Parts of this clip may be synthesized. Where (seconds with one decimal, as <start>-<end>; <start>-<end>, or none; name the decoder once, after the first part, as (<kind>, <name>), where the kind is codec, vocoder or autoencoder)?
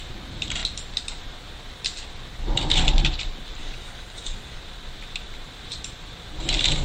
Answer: 3.6-4.6 (codec, DAC)